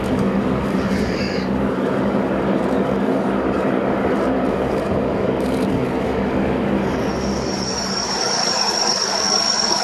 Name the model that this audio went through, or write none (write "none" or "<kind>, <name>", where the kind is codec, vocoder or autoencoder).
codec, DAC